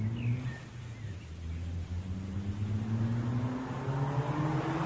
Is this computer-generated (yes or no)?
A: no